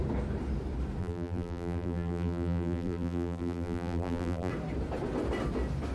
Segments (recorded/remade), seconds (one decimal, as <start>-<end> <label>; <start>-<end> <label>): 0.0-1.0 recorded; 1.0-4.5 remade; 4.5-5.9 recorded